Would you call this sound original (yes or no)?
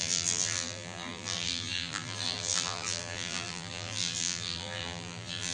no